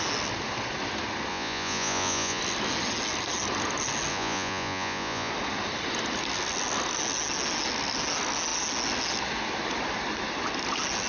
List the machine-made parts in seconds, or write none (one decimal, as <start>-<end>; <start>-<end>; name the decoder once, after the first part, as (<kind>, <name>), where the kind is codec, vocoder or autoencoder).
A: 1.3-2.4 (vocoder, Vocos); 4.1-5.3